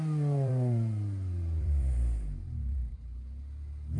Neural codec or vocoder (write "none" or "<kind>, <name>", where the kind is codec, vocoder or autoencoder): vocoder, BigVGAN v2